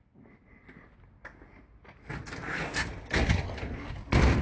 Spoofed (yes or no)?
no